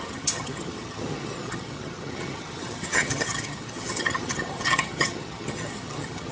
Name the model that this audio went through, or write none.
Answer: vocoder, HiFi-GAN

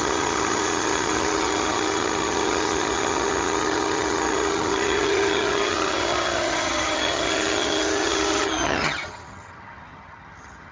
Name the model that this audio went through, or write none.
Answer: vocoder, HiFi-GAN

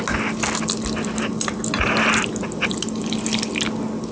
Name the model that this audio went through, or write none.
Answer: none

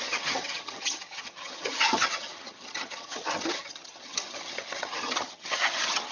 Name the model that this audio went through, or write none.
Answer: vocoder, HiFi-GAN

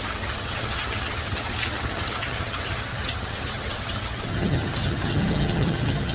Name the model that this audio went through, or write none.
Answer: vocoder, HiFi-GAN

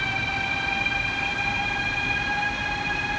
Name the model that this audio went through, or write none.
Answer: none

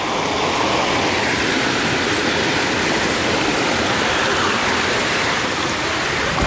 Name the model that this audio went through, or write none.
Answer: none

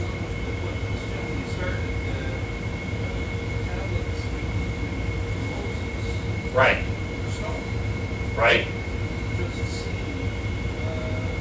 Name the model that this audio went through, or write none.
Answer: none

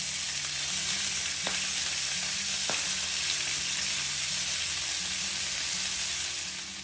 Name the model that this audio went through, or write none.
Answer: none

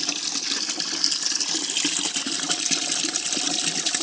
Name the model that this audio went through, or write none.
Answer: none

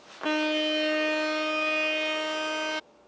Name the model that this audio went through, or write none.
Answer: none